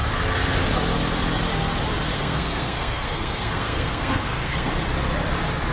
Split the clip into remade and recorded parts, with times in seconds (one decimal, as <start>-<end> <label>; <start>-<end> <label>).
0.0-2.1 recorded; 2.1-4.7 remade; 4.7-5.7 recorded